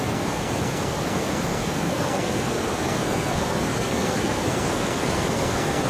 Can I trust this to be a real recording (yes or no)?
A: no